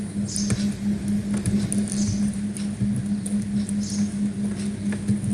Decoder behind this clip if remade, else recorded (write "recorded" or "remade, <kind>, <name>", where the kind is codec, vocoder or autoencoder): recorded